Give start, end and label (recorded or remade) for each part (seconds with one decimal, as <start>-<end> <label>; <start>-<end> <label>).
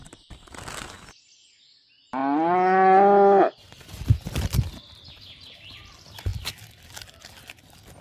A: 0.0-8.0 recorded